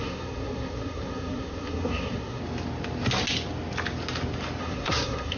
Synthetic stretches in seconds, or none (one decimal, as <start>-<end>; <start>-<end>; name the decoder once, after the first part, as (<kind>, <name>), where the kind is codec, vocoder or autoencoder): 0.0-2.4 (codec, SNAC); 4.6-5.4